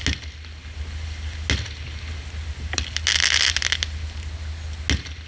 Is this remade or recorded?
recorded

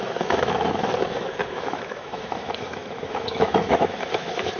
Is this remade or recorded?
remade